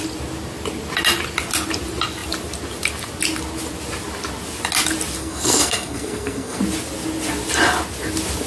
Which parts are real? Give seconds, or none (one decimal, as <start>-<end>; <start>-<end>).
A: 0.0-5.2; 6.6-8.5